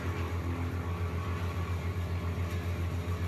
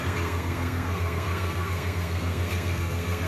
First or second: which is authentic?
first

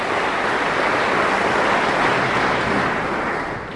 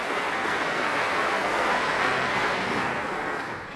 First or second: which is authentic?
first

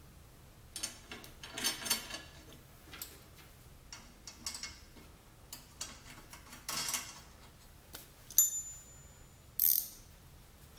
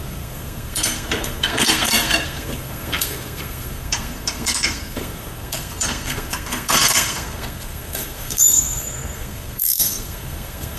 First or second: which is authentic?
first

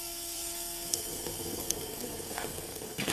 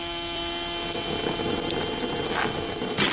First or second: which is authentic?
second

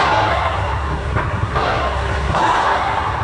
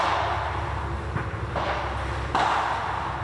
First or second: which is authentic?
second